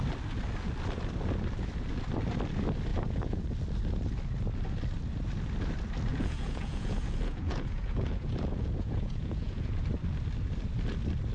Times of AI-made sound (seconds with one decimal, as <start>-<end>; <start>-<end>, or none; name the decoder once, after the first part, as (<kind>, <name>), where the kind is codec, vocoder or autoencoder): 2.9-3.4 (vocoder, Vocos); 6.1-9.8